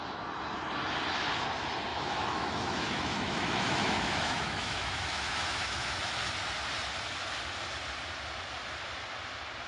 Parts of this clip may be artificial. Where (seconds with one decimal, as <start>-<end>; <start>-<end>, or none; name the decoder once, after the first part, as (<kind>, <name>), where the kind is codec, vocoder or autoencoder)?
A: 1.9-6.0 (autoencoder, DAC-VAE)